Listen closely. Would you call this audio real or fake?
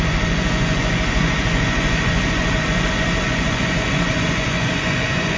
fake